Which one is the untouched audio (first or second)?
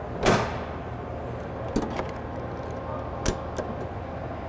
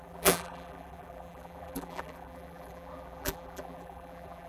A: first